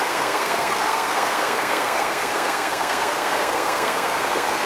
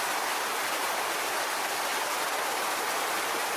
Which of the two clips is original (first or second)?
second